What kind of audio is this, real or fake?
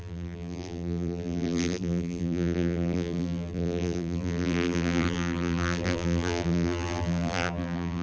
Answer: fake